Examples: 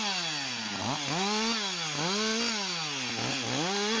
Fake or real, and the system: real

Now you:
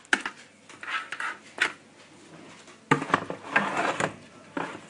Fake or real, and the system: real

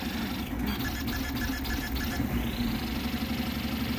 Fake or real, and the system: real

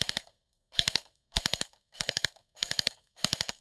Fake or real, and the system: fake, codec, SNAC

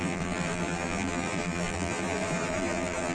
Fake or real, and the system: fake, vocoder, BigVGAN v2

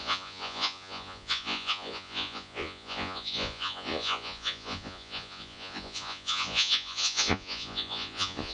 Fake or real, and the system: fake, vocoder, Vocos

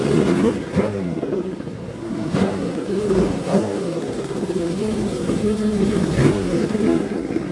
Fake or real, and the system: fake, codec, SNAC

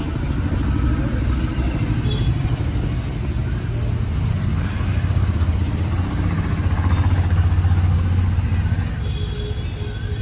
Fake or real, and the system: real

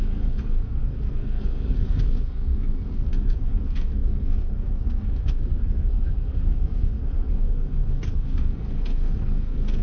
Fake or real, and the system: fake, codec, SNAC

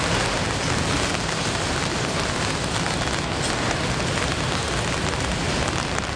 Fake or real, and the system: real